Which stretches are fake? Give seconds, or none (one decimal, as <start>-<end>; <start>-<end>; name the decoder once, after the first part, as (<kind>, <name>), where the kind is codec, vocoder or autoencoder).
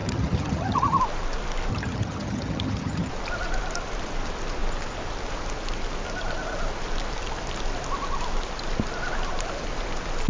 0.0-1.0 (vocoder, HiFi-GAN); 1.7-3.1